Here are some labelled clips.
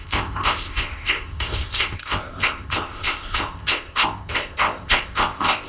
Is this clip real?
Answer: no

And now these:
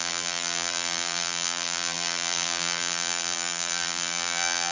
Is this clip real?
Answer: no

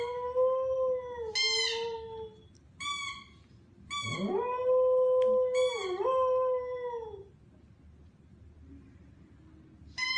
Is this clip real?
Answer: yes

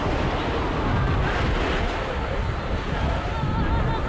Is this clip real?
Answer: yes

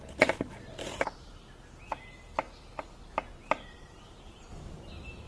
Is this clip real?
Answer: yes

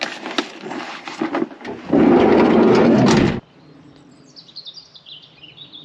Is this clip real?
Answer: yes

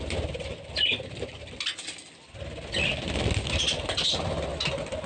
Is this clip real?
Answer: yes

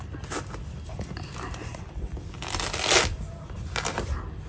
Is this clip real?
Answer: yes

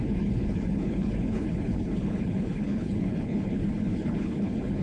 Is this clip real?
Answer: no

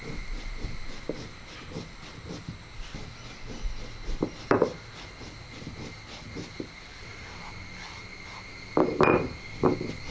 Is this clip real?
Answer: yes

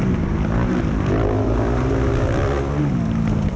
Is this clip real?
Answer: yes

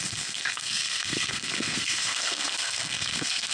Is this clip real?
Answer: no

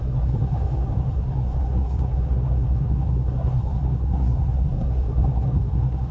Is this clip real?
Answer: no